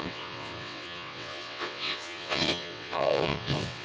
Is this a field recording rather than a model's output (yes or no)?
no